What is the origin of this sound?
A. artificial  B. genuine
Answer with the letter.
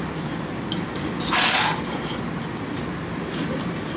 B